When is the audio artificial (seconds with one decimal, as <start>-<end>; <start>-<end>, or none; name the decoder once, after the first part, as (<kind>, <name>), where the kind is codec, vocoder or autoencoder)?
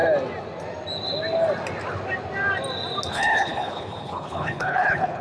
3.1-5.2 (codec, HILCodec)